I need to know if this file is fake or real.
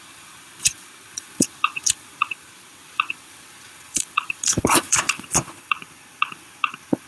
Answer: fake